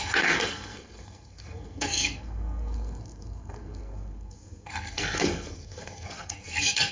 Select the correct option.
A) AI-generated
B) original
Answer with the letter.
A